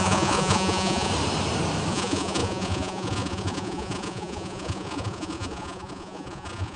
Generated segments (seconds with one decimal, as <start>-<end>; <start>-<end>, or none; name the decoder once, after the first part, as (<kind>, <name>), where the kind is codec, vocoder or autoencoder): 0.0-1.1 (vocoder, Vocos); 1.9-6.8

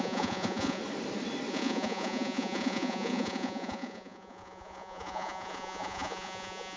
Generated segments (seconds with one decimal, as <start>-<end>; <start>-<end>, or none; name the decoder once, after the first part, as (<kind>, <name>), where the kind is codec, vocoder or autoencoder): 0.0-0.8 (vocoder, Vocos); 1.5-6.8

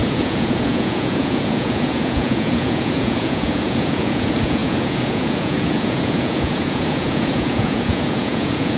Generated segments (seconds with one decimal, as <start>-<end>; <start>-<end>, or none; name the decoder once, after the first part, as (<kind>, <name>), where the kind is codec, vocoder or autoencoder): 0.0-8.8 (vocoder, Vocos)

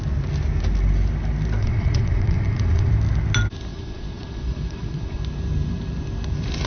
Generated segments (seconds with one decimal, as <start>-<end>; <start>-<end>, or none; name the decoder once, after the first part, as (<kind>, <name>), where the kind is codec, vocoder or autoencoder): 1.6-2.9 (vocoder, Vocos); 3.7-5.2

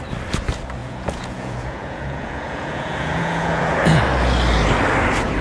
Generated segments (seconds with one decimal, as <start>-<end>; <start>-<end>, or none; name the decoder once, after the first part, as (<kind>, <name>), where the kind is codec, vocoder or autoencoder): 0.8-4.0 (vocoder, Vocos)